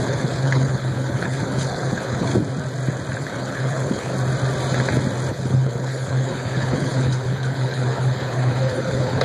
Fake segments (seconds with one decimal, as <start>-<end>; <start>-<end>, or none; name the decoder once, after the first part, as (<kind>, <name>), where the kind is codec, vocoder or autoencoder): 0.0-2.3 (codec, HILCodec); 3.2-4.1; 5.3-9.2